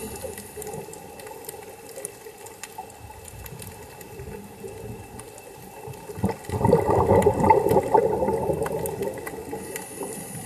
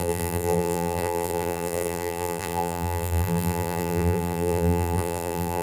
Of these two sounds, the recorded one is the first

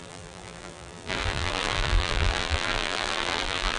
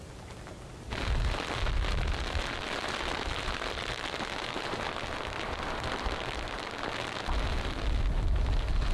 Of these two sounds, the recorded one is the second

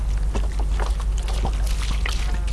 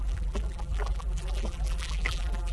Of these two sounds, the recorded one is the first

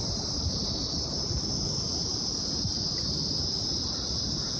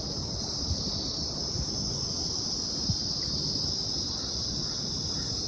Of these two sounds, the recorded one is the second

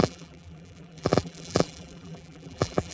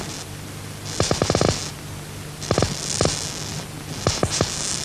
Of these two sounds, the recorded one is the second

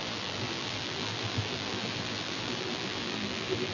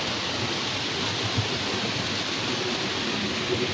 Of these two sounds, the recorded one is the second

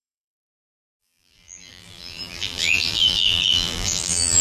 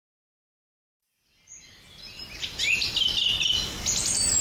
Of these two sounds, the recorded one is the second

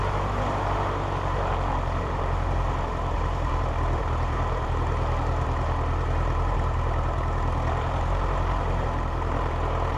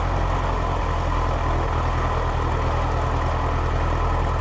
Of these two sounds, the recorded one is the second